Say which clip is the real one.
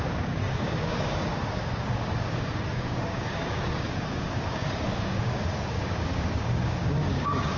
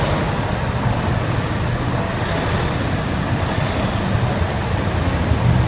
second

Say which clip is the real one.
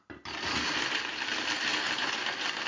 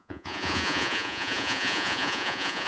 first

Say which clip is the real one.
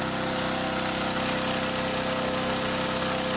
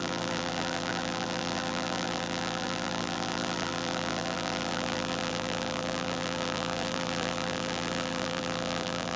first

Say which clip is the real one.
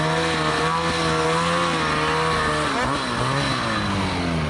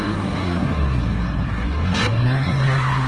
first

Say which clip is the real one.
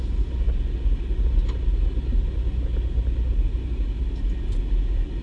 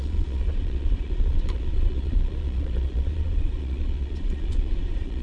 first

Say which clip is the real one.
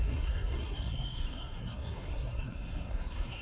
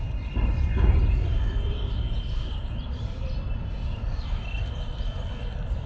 second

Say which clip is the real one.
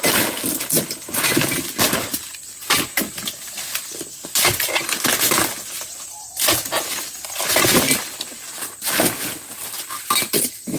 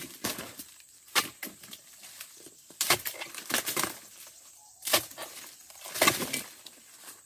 first